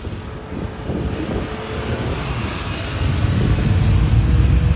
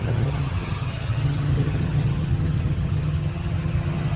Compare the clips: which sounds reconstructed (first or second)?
second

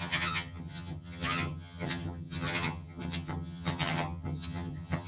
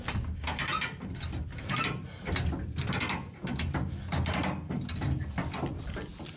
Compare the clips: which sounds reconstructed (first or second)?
first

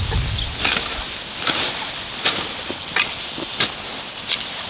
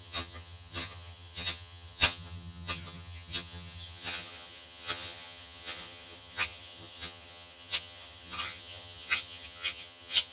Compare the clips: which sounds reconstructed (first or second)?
second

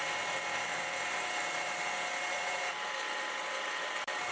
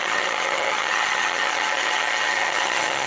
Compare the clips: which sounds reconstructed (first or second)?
second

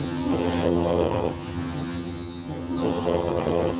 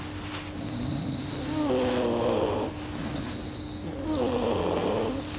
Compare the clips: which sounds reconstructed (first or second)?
first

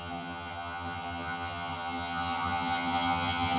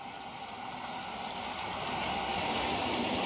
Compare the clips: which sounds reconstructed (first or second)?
first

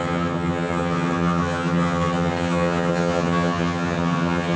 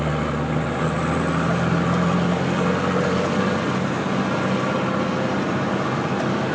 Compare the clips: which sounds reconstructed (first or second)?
first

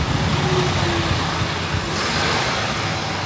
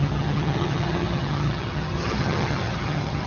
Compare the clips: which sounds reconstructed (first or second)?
second